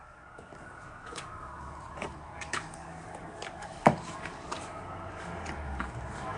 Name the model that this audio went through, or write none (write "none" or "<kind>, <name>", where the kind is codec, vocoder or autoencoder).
codec, DAC